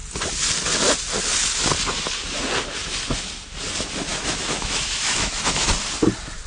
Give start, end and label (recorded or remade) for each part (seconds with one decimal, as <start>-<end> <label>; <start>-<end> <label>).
0.0-4.1 recorded; 4.1-5.7 remade; 5.7-6.5 recorded